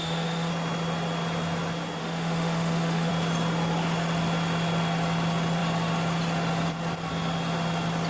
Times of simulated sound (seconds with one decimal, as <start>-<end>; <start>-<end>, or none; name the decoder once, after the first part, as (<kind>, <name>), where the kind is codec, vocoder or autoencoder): 0.0-0.5 (autoencoder, DAC-VAE); 2.0-3.1

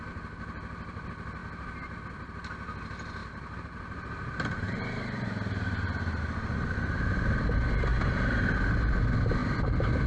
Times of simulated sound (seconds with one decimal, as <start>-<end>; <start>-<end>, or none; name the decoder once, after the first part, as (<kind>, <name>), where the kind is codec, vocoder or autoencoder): 3.2-6.2 (vocoder, BigVGAN v2); 7.9-8.4

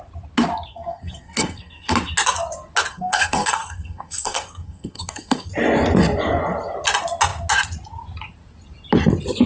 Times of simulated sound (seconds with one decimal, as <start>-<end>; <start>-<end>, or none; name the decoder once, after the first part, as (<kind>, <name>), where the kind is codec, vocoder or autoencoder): 0.7-1.9 (codec, SNAC); 2.9-5.5